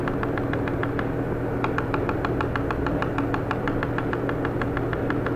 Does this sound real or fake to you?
real